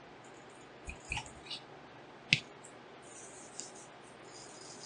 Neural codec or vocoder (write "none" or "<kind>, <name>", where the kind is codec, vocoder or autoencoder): none